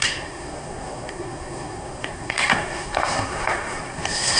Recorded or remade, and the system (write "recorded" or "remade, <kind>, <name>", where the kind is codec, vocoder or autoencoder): remade, codec, SNAC